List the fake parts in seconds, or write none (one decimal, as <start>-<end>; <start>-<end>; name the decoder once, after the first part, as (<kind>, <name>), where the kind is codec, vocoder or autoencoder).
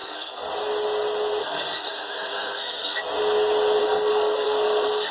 0.0-0.5 (codec, SNAC); 1.4-3.0; 3.8-5.1